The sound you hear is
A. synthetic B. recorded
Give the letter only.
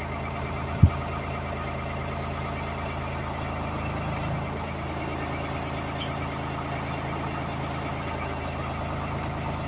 B